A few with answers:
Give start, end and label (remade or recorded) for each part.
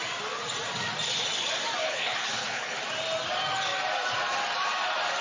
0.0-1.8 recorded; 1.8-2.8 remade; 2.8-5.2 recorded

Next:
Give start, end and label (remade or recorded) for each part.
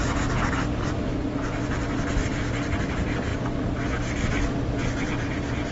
0.0-2.3 recorded; 2.3-2.9 remade; 2.9-5.7 recorded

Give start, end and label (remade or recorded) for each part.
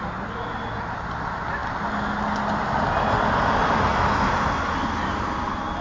0.0-5.8 recorded